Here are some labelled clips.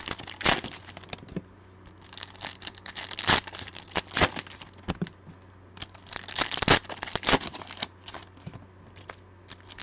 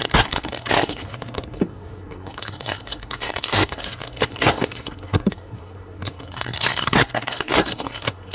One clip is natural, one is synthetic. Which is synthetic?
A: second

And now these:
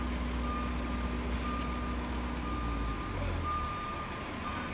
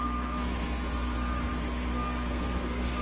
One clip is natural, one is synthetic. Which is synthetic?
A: second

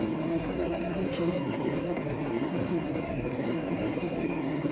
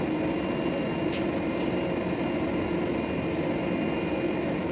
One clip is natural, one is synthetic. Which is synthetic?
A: first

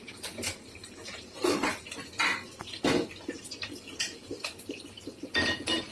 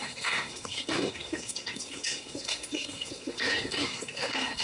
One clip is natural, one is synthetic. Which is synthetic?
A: second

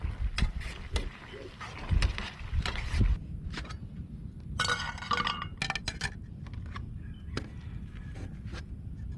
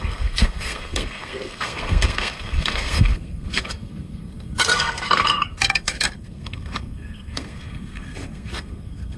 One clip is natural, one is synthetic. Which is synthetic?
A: second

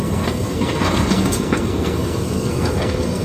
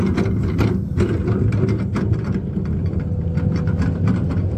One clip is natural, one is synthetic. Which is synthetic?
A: first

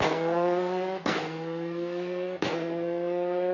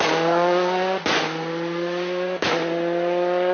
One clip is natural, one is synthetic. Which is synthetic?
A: first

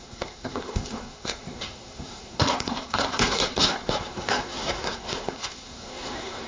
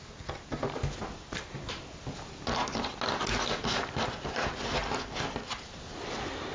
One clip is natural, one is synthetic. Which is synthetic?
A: first